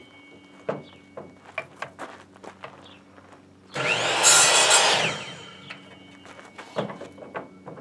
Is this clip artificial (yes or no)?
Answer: no